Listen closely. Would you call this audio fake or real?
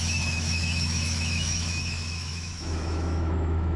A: fake